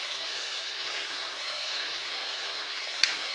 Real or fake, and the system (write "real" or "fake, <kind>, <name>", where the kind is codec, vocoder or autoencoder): fake, codec, SNAC